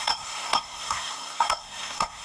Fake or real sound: fake